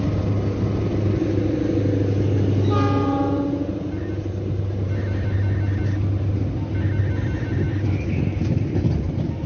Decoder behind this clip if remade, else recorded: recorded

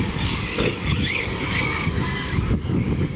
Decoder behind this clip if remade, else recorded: remade, codec, DAC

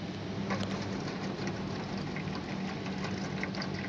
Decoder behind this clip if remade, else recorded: recorded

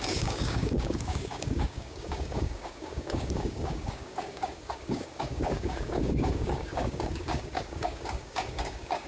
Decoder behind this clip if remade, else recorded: remade, codec, DAC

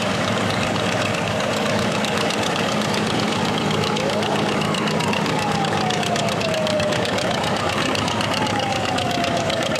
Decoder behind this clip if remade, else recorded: remade, codec, DAC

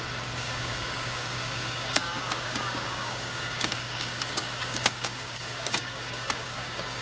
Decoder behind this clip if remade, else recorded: remade, codec, DAC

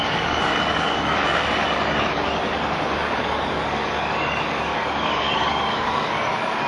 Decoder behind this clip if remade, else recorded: remade, codec, DAC